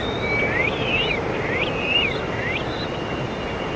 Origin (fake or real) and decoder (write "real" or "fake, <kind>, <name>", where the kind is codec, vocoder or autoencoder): real